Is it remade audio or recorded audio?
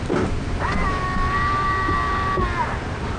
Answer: recorded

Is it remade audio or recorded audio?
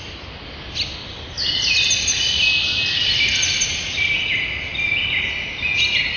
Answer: recorded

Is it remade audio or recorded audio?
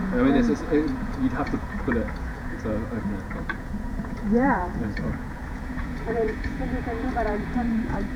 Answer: remade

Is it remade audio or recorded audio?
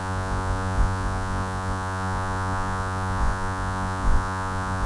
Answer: remade